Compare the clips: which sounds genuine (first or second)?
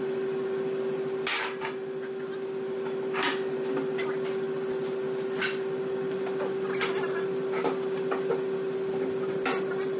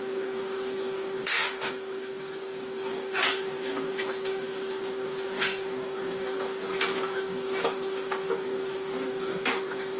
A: first